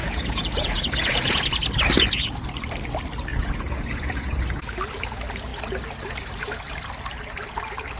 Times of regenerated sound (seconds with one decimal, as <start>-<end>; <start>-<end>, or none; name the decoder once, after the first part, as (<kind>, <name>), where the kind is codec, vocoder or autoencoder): 0.0-1.4 (vocoder, Vocos); 3.3-4.6